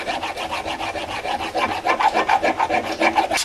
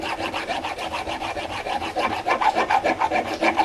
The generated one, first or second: second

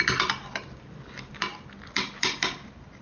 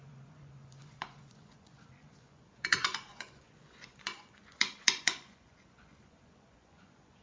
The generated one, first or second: second